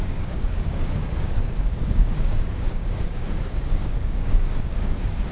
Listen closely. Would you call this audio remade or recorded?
remade